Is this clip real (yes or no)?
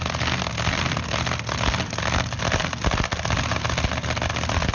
yes